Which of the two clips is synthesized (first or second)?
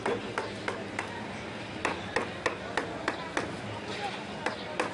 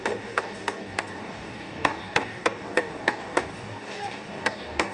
second